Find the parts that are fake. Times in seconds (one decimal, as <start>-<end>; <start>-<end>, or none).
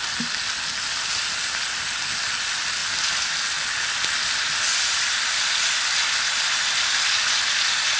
none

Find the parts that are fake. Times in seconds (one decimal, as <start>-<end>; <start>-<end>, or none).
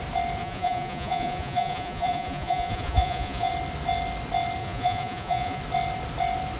0.4-3.5; 4.6-5.6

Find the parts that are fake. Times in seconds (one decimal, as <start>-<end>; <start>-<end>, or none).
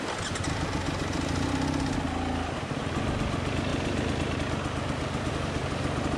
none